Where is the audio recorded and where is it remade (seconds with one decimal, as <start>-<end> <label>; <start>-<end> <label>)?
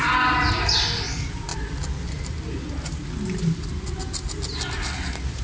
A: 0.0-5.4 recorded